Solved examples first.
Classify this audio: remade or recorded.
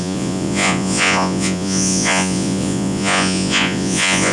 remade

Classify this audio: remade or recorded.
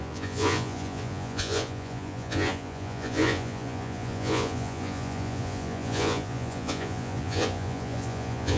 remade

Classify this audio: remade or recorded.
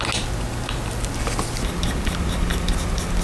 recorded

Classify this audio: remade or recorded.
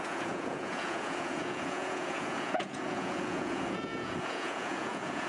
remade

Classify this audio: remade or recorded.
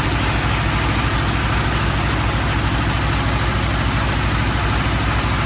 recorded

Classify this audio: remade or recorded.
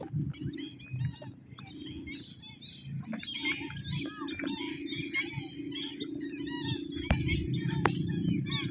recorded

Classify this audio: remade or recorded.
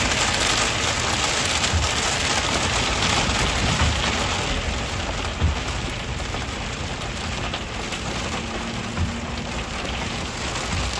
recorded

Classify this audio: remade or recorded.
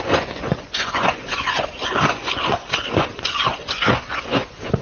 remade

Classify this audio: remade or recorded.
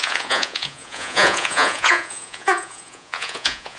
remade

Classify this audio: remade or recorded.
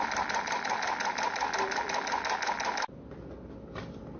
recorded